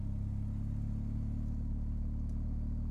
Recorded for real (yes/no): yes